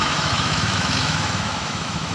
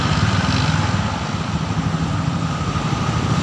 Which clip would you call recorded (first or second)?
second